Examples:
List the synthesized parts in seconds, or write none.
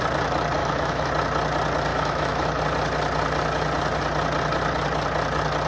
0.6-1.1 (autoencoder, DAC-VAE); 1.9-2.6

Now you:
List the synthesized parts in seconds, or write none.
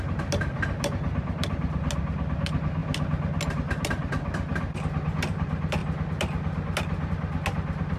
none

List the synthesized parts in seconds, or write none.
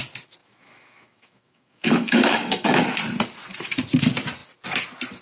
0.4-2.8 (autoencoder, DAC-VAE)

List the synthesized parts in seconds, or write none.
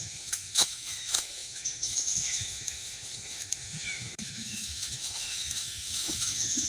0.0-6.7 (autoencoder, DAC-VAE)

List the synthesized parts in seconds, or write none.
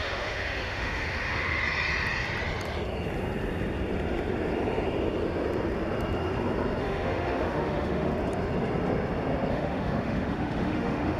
0.0-1.6 (autoencoder, DAC-VAE); 6.8-8.1; 9.5-11.2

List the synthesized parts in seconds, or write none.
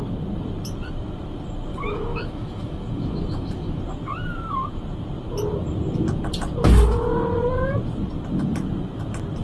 1.7-3.8 (autoencoder, DAC-VAE)